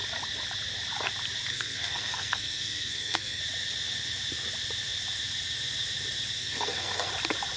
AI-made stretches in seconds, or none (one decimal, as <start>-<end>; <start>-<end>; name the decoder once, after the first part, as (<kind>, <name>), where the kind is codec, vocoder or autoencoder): 1.5-3.4 (codec, SNAC); 6.4-7.1